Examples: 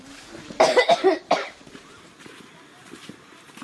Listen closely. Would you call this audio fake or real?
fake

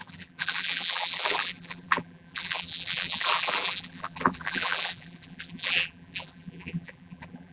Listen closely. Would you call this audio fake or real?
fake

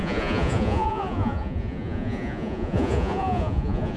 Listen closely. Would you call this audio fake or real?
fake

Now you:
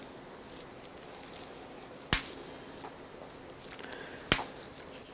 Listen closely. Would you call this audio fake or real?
real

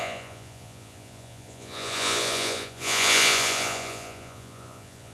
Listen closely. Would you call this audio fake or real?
fake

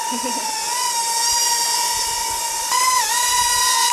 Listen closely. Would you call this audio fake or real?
real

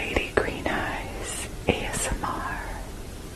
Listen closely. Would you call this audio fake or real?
real